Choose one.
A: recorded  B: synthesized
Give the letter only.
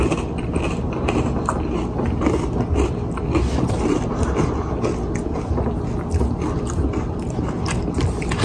A